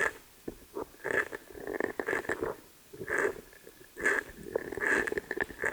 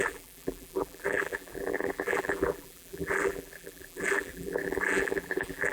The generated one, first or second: second